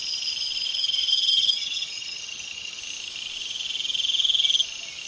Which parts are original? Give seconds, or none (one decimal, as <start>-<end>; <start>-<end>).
0.0-0.7; 2.8-5.1